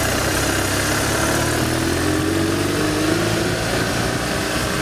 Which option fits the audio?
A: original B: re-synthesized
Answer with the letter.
A